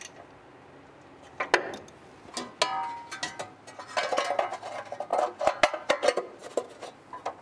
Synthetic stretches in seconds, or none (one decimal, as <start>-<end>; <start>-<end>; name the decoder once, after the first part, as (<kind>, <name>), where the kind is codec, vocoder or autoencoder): none